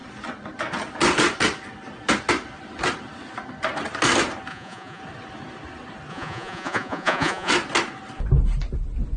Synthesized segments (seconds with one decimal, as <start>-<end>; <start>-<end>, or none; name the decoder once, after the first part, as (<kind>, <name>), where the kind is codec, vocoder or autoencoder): 4.5-5.0 (vocoder, Vocos); 6.1-7.5